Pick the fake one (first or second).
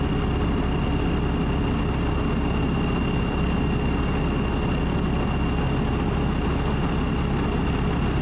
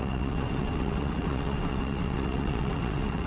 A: second